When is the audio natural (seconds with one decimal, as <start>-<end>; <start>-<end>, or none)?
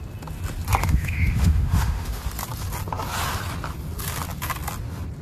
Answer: 0.0-0.8; 2.2-5.2